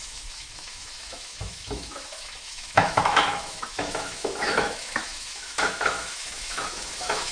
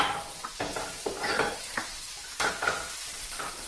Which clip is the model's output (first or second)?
first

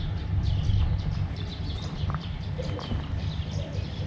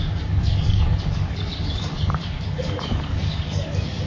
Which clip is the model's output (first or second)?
second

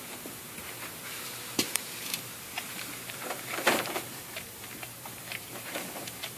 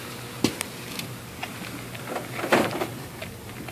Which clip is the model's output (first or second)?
first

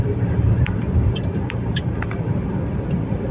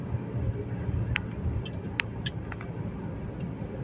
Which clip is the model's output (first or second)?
first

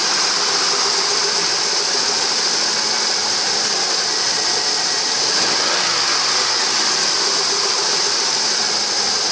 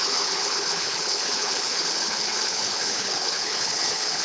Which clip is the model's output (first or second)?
second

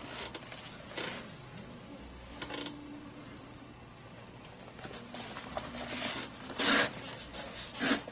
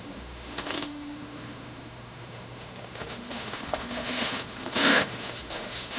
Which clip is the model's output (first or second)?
second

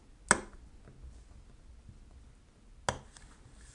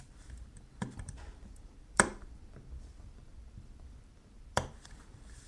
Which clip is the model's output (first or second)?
second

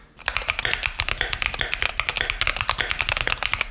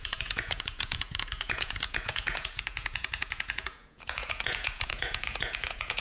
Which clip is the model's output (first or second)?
second